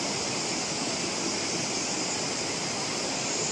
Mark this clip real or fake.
real